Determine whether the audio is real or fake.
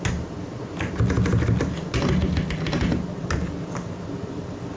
real